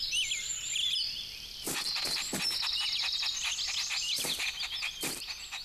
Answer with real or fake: real